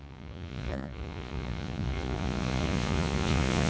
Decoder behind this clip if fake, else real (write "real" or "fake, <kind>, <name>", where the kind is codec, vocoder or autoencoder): fake, vocoder, Vocos